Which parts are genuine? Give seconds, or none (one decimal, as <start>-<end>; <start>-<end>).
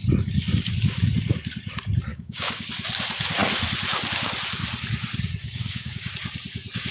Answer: 0.0-2.1; 2.7-5.4; 6.1-6.9